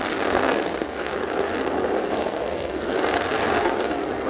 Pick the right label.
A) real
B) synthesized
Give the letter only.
B